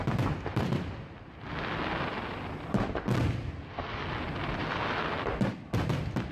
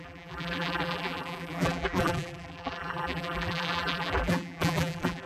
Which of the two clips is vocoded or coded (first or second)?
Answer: second